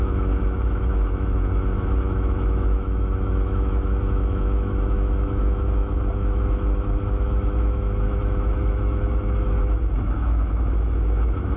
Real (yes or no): no